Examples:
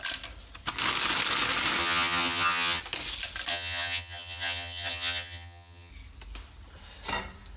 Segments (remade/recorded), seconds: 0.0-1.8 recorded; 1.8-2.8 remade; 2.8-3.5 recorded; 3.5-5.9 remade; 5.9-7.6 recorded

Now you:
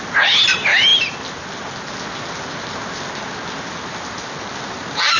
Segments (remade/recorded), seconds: 0.0-5.2 recorded

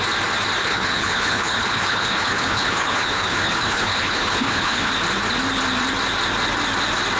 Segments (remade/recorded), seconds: 0.0-0.6 recorded; 0.6-4.9 remade; 4.9-7.2 recorded

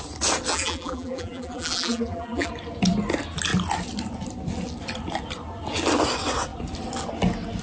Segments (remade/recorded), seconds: 0.0-0.5 recorded; 0.5-2.5 remade; 2.5-7.6 recorded